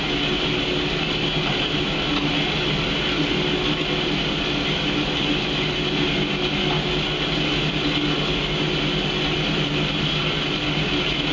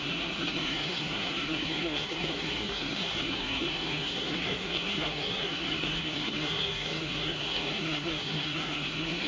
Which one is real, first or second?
first